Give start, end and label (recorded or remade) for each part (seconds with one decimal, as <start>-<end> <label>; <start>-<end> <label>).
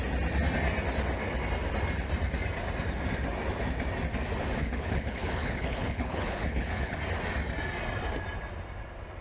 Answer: 0.0-4.6 recorded; 4.6-7.0 remade; 7.0-9.2 recorded